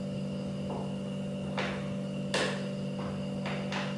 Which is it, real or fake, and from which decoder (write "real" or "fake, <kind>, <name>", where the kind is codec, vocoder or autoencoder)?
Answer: real